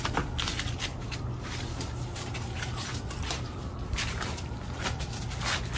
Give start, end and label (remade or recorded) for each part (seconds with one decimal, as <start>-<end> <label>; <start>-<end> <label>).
0.0-0.9 recorded; 0.9-4.4 remade; 4.4-5.8 recorded